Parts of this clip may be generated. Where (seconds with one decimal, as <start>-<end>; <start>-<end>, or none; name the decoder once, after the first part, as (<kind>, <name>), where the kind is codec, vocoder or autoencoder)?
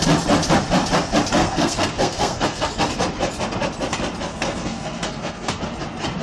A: 1.4-2.7 (codec, SNAC); 4.3-5.6